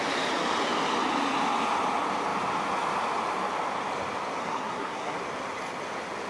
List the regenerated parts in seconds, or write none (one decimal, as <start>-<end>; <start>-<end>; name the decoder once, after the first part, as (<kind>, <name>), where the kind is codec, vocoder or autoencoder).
4.4-5.2 (codec, SNAC)